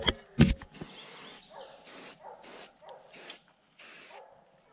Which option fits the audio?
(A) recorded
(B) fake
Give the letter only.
A